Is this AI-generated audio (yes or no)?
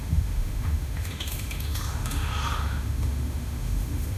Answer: yes